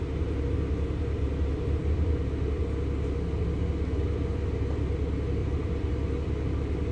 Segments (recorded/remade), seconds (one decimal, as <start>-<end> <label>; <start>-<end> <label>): 0.0-5.4 recorded; 5.4-5.9 remade; 5.9-6.9 recorded